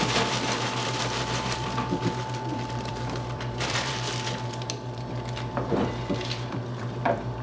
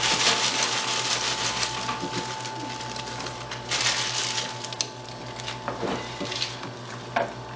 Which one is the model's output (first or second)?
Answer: first